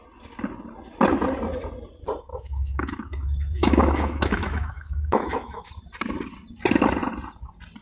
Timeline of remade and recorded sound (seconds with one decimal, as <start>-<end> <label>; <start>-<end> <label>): 0.0-2.3 recorded; 2.3-5.7 remade; 5.7-7.8 recorded